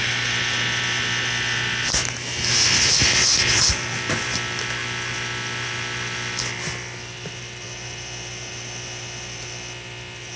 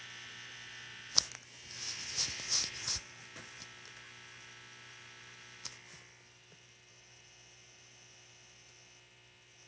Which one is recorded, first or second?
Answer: second